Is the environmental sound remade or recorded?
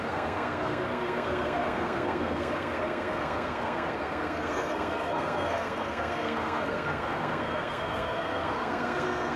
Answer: remade